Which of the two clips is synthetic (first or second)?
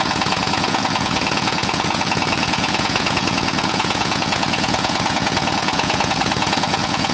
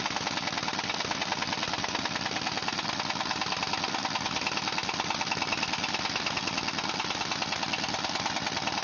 first